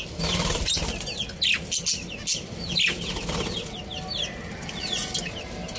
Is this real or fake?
real